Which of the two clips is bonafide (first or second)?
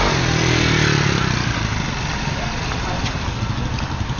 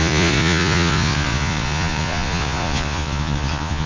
first